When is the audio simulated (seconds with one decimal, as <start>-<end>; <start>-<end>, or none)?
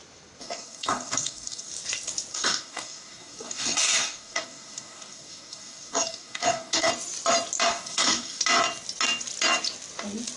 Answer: 0.4-1.7; 2.3-6.9; 7.7-8.4